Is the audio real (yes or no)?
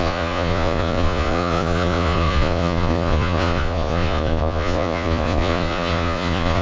no